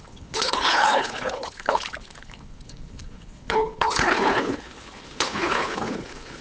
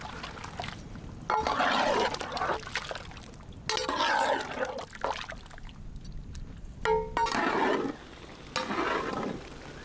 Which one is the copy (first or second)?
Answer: first